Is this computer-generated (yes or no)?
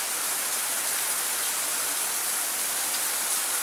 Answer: no